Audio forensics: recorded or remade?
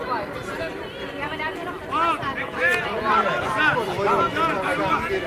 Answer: recorded